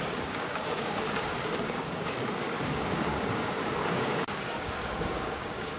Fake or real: fake